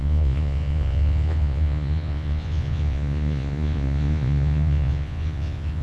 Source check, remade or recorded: remade